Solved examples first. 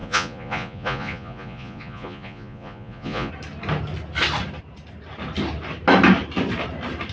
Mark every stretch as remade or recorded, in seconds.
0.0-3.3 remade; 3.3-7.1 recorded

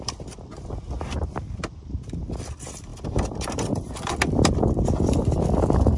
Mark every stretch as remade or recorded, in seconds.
0.0-2.9 recorded; 2.9-4.1 remade; 4.1-6.0 recorded

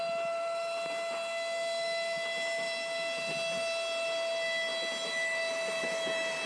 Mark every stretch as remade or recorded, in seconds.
0.0-6.5 recorded

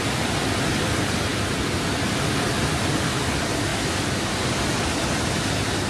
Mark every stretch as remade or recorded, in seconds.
0.0-5.9 recorded

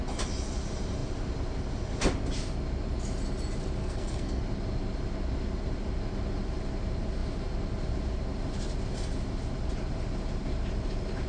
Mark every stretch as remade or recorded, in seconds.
0.0-3.8 recorded; 3.8-4.4 remade; 4.4-11.3 recorded

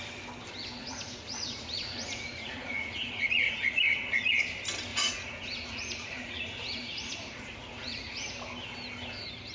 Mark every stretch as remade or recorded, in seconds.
0.0-0.8 recorded; 0.8-4.4 remade; 4.4-4.9 recorded; 4.9-8.3 remade; 8.3-9.5 recorded